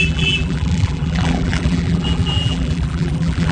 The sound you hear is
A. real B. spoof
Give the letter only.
B